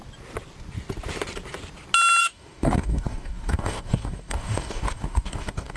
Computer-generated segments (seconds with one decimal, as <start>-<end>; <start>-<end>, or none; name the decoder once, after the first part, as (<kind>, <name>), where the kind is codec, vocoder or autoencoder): 2.2-5.8 (codec, DAC)